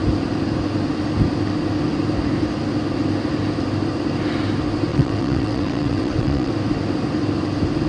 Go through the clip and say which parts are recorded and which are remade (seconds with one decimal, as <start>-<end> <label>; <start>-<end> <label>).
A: 0.0-4.9 recorded; 4.9-6.5 remade; 6.5-7.9 recorded